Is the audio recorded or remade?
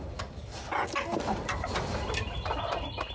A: recorded